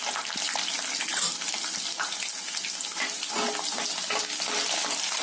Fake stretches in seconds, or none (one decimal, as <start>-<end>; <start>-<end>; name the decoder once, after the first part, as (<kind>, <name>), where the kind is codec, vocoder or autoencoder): none